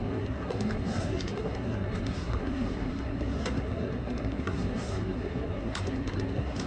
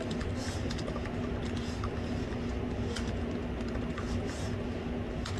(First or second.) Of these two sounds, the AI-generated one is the first